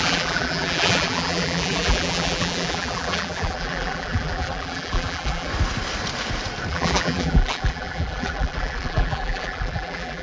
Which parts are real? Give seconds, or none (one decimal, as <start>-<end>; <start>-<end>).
5.5-6.7